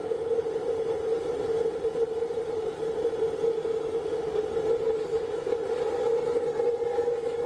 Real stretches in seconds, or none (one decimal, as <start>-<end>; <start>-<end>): 0.0-7.5